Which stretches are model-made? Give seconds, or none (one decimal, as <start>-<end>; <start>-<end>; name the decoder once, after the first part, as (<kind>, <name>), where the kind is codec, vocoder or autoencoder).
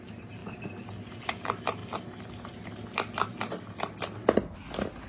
none